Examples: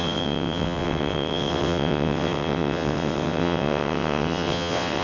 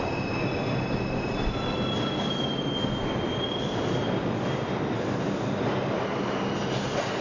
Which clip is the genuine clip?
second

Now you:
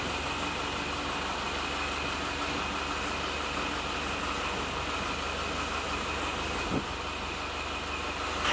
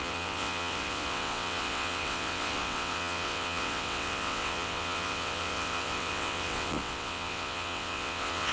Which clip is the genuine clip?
first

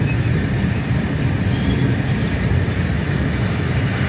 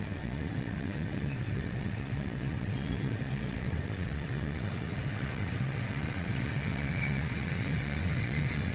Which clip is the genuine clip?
first